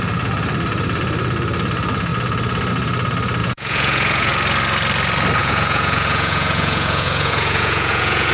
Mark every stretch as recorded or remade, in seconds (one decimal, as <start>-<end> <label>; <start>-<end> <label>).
0.0-3.4 recorded; 3.4-4.3 remade; 4.3-5.4 recorded; 5.4-8.3 remade

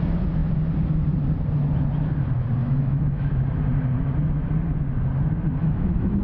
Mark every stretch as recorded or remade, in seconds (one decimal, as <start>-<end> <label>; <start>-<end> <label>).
0.0-2.6 recorded; 2.6-3.4 remade; 3.4-5.6 recorded; 5.6-6.2 remade

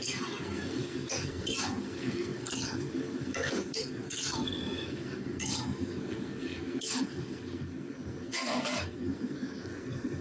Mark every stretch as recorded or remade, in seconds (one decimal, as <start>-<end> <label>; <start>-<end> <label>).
0.0-10.2 remade

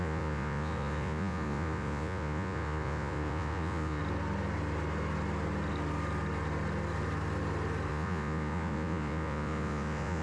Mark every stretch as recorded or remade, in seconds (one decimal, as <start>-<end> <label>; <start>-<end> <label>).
0.0-4.0 remade; 4.0-7.9 recorded; 7.9-10.2 remade

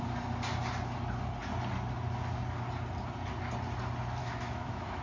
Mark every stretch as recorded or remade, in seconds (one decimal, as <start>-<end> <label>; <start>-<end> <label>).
0.0-4.2 recorded; 4.2-5.0 remade

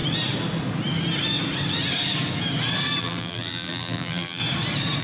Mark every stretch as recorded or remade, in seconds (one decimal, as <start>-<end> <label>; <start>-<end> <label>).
0.0-3.0 recorded; 3.0-4.4 remade; 4.4-5.0 recorded

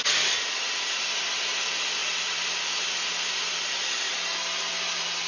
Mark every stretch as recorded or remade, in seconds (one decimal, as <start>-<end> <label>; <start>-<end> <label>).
0.0-5.3 recorded

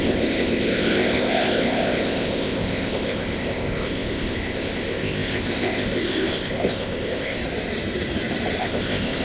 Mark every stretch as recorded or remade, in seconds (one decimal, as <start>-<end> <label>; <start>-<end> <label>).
0.0-7.4 remade; 7.4-8.6 recorded; 8.6-9.2 remade